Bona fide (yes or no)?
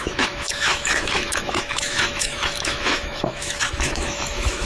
no